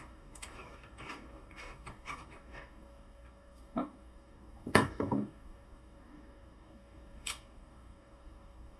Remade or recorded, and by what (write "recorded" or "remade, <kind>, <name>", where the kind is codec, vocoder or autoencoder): remade, codec, DAC